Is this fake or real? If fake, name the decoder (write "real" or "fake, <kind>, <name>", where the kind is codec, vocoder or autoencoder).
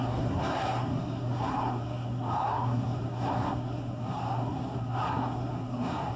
fake, codec, SNAC